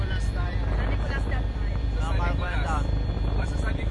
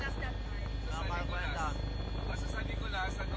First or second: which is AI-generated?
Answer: first